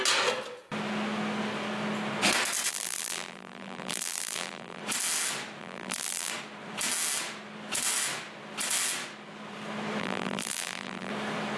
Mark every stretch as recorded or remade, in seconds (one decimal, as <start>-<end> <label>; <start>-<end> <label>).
0.0-2.7 recorded; 2.7-4.8 remade; 4.8-5.6 recorded; 5.6-6.3 remade; 6.3-10.0 recorded; 10.0-11.1 remade; 11.1-11.6 recorded